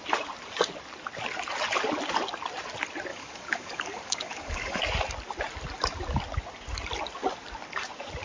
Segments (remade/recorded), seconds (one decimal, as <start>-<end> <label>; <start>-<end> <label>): 0.0-3.1 recorded; 3.1-4.8 remade; 4.8-8.2 recorded